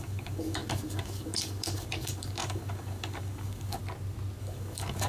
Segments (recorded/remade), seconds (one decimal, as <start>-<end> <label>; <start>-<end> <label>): 0.0-3.8 remade; 3.8-4.4 recorded; 4.4-5.1 remade